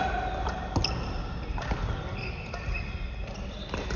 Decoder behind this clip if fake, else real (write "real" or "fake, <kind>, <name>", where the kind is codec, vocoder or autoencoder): real